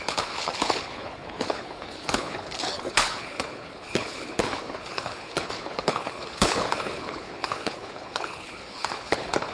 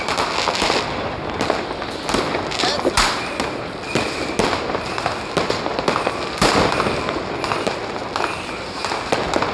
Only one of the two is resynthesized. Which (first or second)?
first